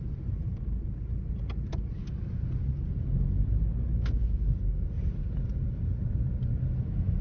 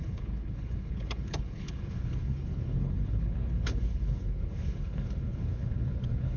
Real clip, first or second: first